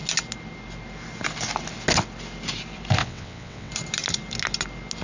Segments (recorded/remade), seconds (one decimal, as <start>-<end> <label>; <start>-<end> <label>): 0.0-3.0 recorded; 3.0-3.7 remade; 3.7-5.0 recorded